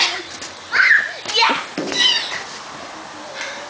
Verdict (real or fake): real